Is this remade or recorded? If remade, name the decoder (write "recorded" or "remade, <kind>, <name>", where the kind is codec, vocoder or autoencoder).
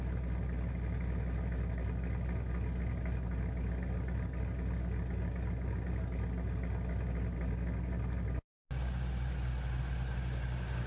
recorded